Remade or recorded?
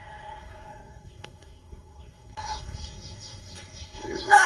remade